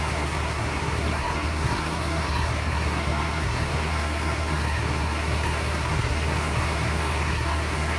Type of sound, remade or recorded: remade